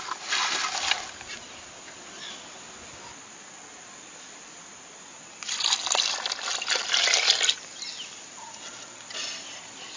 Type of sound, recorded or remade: recorded